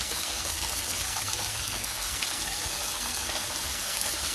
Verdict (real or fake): fake